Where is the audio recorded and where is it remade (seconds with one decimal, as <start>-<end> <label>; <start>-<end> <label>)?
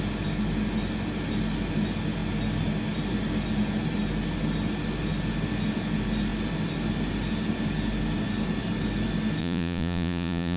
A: 0.0-9.4 recorded; 9.4-10.6 remade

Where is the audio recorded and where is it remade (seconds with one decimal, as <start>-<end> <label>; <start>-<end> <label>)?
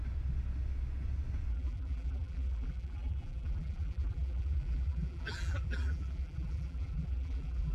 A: 0.0-1.5 recorded; 1.5-7.7 remade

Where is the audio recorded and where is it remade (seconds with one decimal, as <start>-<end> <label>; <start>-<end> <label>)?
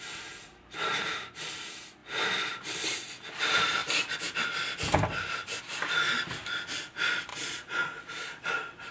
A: 0.0-7.3 recorded; 7.3-8.5 remade; 8.5-8.9 recorded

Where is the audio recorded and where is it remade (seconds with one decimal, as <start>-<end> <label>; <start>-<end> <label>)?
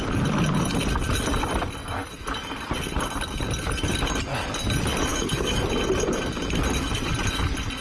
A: 0.0-5.1 recorded; 5.1-5.7 remade; 5.7-7.8 recorded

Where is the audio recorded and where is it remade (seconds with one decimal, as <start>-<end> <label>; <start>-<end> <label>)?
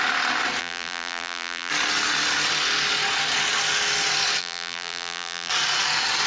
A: 0.0-0.6 recorded; 0.6-1.7 remade; 1.7-4.4 recorded; 4.4-5.5 remade; 5.5-6.3 recorded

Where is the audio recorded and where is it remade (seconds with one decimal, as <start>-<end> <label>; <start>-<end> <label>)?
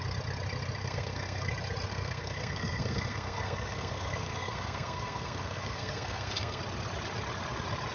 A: 0.0-0.8 recorded; 0.8-1.5 remade; 1.5-1.9 recorded; 1.9-6.6 remade; 6.6-7.9 recorded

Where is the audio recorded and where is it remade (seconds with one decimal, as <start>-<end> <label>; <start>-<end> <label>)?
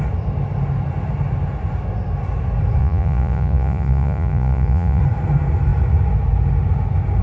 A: 0.0-2.8 recorded; 2.8-5.0 remade; 5.0-7.2 recorded